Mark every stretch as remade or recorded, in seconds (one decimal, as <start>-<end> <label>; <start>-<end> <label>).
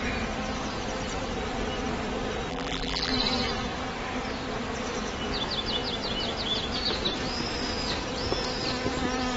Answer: 0.0-2.5 recorded; 2.5-3.1 remade; 3.1-9.4 recorded